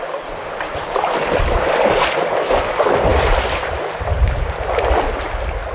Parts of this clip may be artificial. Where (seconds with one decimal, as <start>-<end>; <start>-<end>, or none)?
none